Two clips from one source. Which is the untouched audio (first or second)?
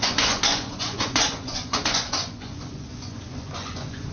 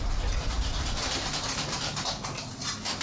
second